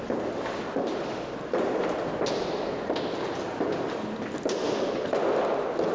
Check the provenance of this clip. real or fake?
real